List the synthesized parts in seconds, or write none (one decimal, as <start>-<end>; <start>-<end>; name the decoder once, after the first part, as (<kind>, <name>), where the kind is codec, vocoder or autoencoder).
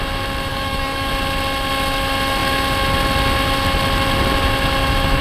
0.5-1.1 (codec, DAC)